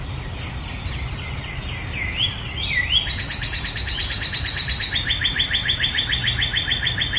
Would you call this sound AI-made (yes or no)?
no